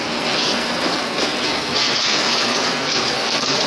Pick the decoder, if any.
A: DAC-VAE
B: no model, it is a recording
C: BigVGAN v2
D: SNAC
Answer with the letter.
D